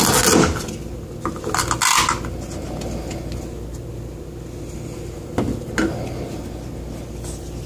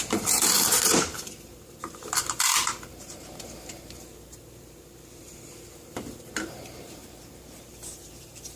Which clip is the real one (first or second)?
first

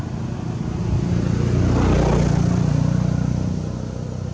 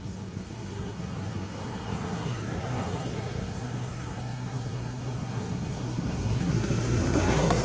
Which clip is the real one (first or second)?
first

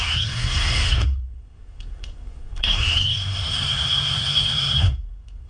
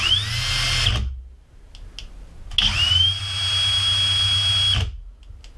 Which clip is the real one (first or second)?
second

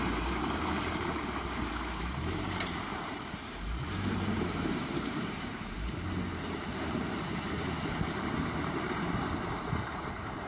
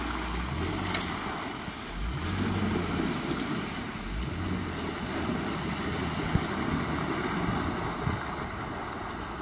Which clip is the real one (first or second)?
second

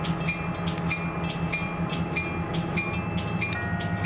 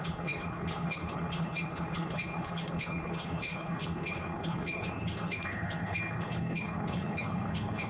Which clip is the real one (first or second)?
first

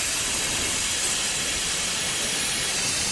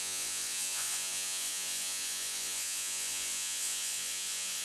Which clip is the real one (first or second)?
first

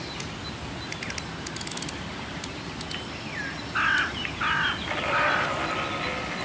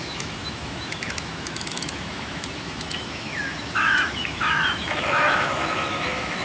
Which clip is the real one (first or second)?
first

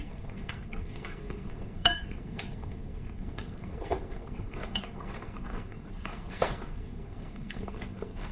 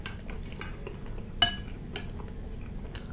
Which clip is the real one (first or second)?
second